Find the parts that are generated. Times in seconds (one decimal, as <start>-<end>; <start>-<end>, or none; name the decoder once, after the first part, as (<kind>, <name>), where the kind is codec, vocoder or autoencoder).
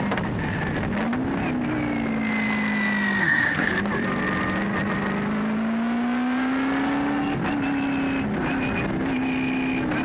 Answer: 3.2-3.7 (codec, SNAC)